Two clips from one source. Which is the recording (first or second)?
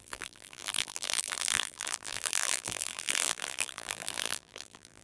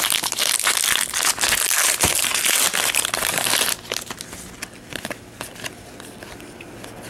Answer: second